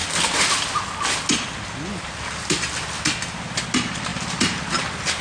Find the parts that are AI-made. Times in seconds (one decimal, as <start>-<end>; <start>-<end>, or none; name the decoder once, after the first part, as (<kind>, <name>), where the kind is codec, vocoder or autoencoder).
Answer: 4.1-4.7 (vocoder, BigVGAN v2)